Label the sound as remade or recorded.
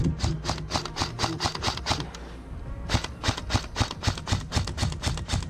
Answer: recorded